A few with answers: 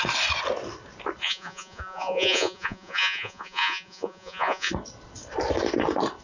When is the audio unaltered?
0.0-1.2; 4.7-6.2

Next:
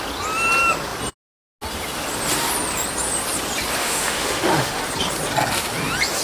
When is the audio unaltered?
0.0-3.8; 4.8-6.2

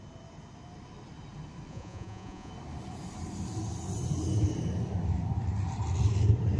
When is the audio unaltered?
0.0-1.7; 2.5-6.6

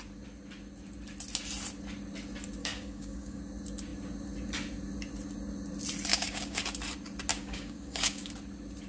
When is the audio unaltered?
0.0-2.6; 3.4-6.1; 6.6-7.3; 8.3-8.9

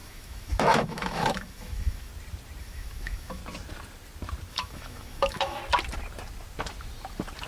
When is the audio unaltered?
2.1-2.6; 3.4-4.5; 5.6-7.5